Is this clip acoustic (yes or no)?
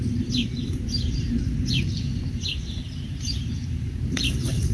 no